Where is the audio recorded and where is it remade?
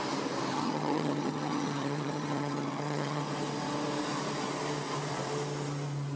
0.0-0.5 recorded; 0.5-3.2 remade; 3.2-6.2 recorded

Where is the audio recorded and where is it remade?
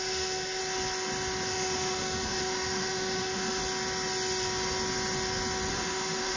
0.0-0.6 remade; 0.6-1.5 recorded; 1.5-3.6 remade; 3.6-5.7 recorded; 5.7-6.4 remade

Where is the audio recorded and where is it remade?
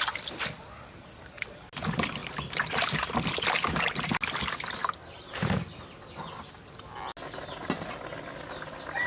0.0-9.1 recorded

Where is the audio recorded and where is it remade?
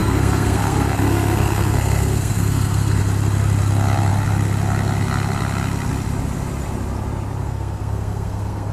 0.0-3.0 remade; 3.0-7.4 recorded; 7.4-8.7 remade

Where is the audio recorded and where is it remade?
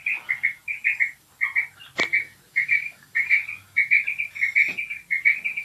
0.0-2.5 recorded; 2.5-3.4 remade; 3.4-5.6 recorded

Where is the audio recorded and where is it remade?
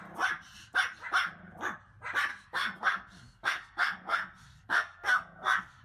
0.0-2.3 recorded; 2.3-5.8 remade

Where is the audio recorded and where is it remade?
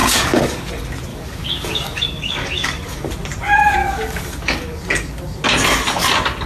0.0-0.7 remade; 0.7-1.1 recorded; 1.1-3.1 remade; 3.1-3.8 recorded; 3.8-5.4 remade; 5.4-6.5 recorded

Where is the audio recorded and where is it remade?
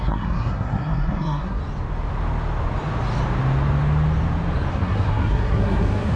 0.0-1.6 remade; 1.6-4.7 recorded; 4.7-6.2 remade